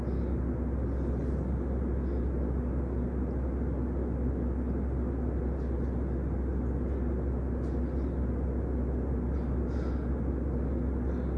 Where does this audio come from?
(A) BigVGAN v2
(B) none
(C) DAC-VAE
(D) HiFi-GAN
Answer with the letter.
B